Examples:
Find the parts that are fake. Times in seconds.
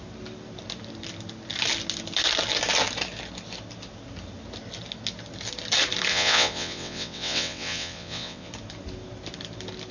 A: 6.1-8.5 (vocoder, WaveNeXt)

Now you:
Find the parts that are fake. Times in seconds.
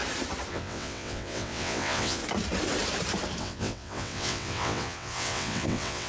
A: 0.5-2.2 (vocoder, WaveNeXt); 3.4-6.1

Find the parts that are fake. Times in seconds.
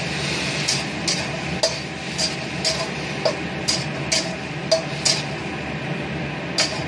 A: none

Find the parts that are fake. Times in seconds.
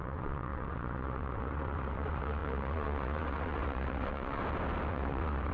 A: 0.0-4.4 (vocoder, WaveNeXt); 4.9-5.5